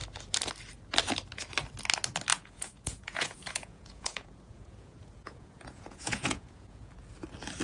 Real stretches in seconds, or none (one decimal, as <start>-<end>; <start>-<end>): 0.0-2.3; 6.9-7.6